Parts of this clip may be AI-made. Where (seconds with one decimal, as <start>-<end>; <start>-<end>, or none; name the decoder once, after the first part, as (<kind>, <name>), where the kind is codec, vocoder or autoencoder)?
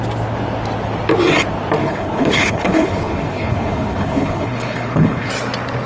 1.8-5.3 (codec, HILCodec)